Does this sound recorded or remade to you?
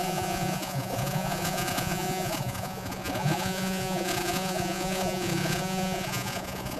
remade